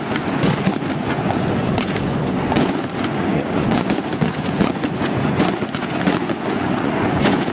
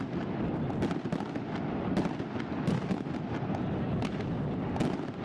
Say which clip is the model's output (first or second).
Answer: first